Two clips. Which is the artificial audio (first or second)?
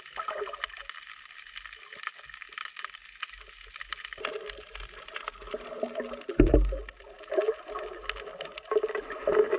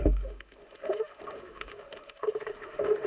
second